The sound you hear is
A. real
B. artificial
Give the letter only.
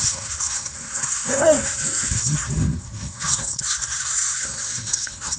B